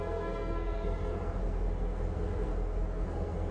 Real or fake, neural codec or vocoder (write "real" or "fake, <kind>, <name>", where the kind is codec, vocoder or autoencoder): fake, codec, SNAC